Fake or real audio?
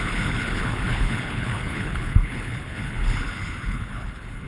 fake